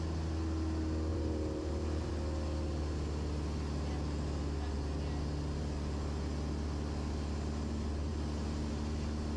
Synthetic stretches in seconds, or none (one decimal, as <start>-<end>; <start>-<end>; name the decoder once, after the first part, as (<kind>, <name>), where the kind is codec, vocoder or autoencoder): 1.1-2.1 (vocoder, BigVGAN v2)